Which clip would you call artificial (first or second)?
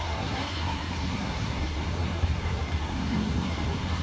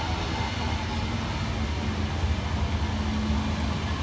first